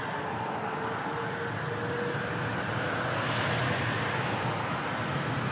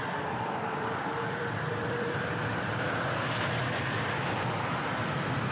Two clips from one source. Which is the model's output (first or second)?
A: second